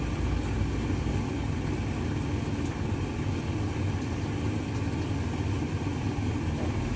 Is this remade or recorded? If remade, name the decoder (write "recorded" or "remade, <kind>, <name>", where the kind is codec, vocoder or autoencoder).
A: recorded